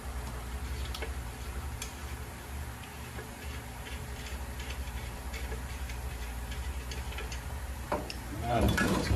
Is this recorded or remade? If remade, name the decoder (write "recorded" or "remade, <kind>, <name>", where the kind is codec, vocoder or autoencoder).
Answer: remade, vocoder, BigVGAN v2